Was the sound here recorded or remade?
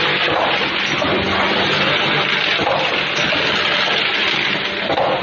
recorded